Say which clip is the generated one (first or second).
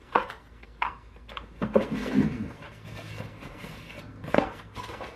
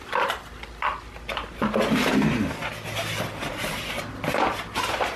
first